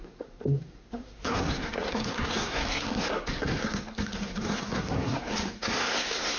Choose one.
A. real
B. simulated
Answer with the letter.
B